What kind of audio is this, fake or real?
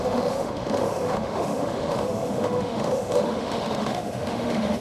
fake